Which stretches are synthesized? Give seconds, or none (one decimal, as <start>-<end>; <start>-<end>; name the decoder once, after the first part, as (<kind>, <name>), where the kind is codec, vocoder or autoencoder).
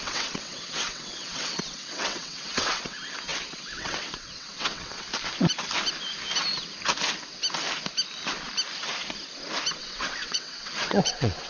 0.0-5.1 (vocoder, WaveNeXt); 9.8-11.5